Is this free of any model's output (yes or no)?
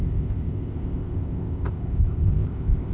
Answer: no